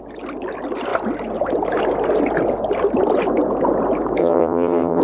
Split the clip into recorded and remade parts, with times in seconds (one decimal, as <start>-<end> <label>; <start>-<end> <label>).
0.0-4.2 recorded; 4.2-5.0 remade